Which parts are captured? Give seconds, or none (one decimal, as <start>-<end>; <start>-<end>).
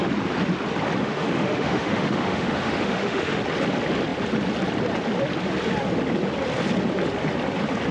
0.0-1.0; 3.4-7.9